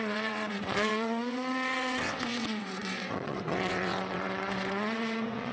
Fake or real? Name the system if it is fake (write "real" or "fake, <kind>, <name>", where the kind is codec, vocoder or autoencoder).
fake, vocoder, WaveNeXt